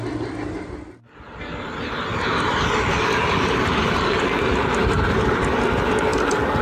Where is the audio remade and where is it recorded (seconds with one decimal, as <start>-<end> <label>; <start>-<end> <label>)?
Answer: 0.0-2.1 recorded; 2.1-5.2 remade; 5.2-6.6 recorded